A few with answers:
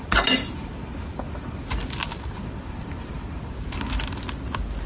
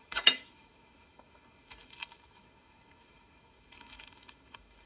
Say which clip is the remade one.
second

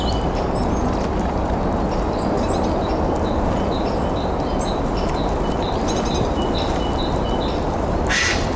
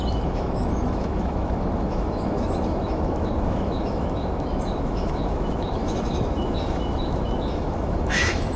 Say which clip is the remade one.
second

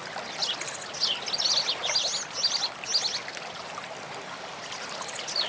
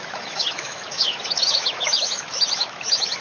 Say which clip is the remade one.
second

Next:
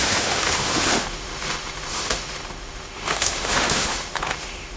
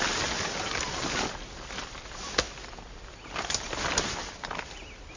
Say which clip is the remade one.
first